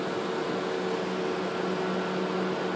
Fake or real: real